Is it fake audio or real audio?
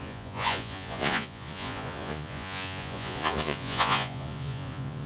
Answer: fake